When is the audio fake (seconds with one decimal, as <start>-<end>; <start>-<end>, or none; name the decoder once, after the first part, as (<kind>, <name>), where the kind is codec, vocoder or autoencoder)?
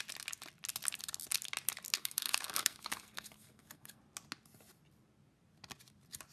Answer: 2.0-4.0 (codec, SNAC)